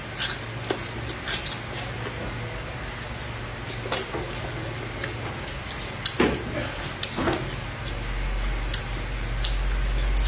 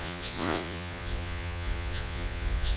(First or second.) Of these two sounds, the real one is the first